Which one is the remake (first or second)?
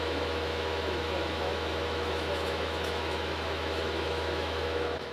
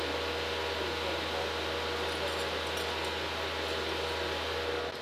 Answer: first